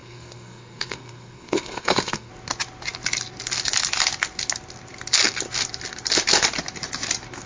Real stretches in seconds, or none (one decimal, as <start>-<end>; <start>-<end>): 2.3-7.5